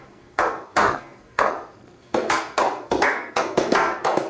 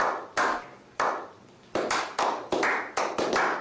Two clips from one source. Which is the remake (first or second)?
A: first